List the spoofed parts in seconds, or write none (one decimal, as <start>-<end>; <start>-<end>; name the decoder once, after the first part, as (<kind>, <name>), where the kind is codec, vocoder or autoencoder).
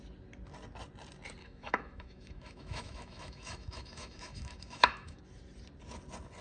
1.4-5.2 (autoencoder, DAC-VAE)